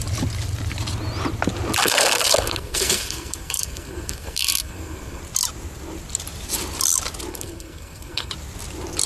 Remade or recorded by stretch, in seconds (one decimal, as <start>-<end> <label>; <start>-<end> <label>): 0.0-1.8 recorded; 1.8-5.2 remade; 5.2-7.3 recorded; 7.3-8.3 remade; 8.3-9.1 recorded